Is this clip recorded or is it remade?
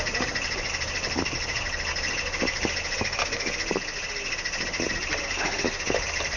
recorded